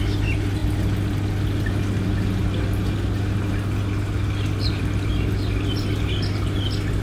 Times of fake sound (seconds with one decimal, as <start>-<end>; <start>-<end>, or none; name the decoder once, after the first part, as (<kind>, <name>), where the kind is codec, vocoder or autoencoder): none